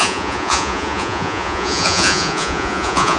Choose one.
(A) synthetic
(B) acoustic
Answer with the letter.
A